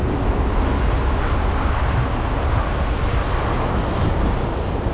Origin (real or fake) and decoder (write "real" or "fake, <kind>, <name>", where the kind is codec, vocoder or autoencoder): real